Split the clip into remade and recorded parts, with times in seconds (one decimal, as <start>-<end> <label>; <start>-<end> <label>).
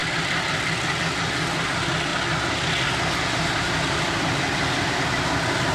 0.0-5.7 recorded